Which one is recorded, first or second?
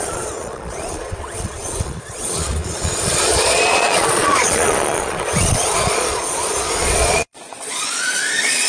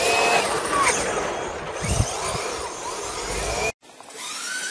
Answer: second